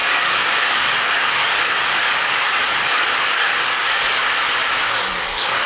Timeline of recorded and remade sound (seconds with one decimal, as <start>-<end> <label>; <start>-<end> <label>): 0.0-4.2 remade; 4.2-4.9 recorded; 4.9-5.7 remade